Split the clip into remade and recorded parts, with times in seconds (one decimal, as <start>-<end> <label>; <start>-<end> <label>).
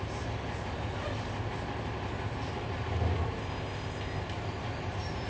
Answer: 0.0-3.4 recorded; 3.4-4.2 remade; 4.2-5.3 recorded